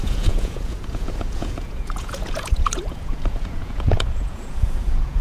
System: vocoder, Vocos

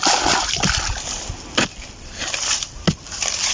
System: none